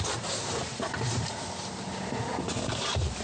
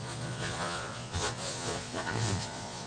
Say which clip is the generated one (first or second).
second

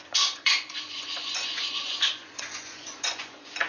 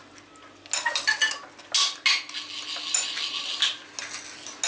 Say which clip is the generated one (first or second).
first